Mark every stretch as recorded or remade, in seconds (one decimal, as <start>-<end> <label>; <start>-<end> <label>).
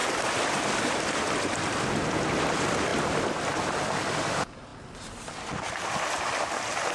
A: 0.0-2.0 remade; 2.0-2.9 recorded; 2.9-3.8 remade; 3.8-6.9 recorded